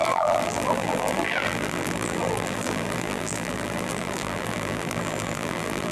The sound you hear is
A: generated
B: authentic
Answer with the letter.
A